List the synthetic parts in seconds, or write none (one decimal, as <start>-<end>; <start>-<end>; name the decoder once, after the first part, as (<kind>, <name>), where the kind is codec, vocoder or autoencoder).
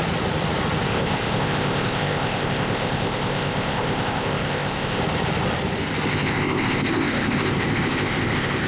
0.9-5.0 (codec, ZipCodec); 6.1-8.7